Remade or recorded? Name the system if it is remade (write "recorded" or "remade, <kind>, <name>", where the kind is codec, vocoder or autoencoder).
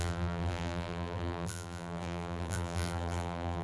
remade, vocoder, BigVGAN v2